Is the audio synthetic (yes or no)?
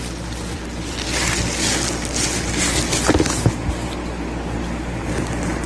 no